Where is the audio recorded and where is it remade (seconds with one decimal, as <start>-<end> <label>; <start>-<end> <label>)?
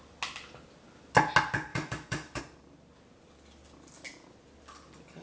0.0-1.7 recorded; 1.7-2.4 remade; 2.4-5.2 recorded